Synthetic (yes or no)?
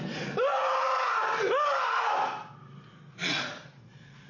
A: no